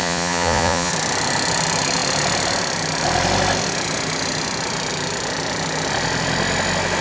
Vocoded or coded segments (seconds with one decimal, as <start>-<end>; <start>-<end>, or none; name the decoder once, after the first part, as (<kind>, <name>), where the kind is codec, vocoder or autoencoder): 0.0-0.9 (vocoder, Vocos)